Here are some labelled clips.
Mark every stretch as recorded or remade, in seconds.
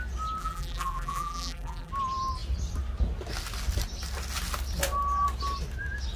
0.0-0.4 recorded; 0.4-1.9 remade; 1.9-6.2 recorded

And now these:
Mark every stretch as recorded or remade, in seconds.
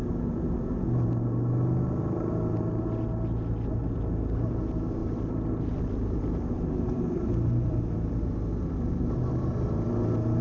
0.0-5.0 recorded; 5.0-9.0 remade; 9.0-10.4 recorded